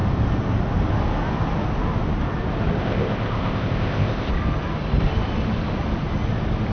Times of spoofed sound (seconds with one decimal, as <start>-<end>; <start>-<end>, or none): 2.8-4.3